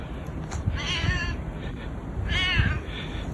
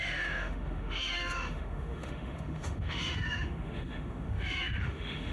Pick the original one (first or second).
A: first